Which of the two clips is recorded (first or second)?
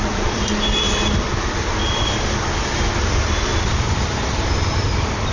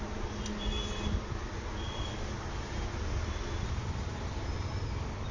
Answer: second